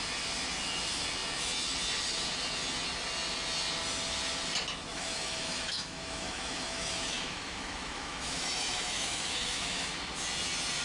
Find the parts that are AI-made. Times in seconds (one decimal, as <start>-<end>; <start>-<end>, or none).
4.9-9.9